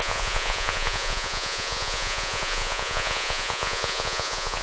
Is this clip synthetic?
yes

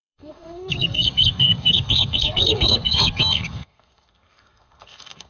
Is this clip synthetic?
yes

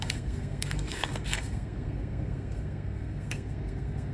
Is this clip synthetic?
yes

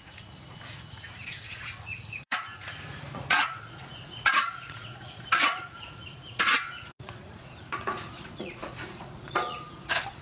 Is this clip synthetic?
yes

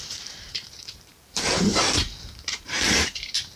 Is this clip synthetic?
yes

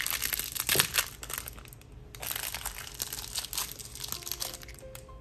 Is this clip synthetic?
no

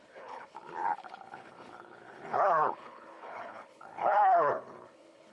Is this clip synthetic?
yes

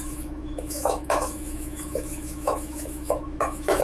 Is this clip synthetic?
yes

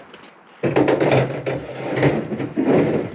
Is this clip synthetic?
no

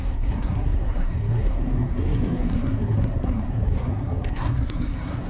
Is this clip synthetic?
yes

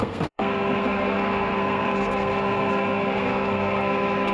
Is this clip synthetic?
yes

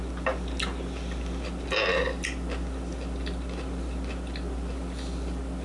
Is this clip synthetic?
no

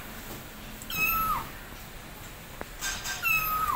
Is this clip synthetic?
no